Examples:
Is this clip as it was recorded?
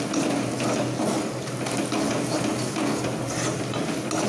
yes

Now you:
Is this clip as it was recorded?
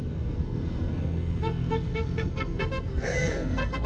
no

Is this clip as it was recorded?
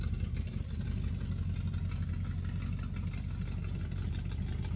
yes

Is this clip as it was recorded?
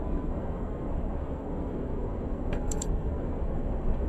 no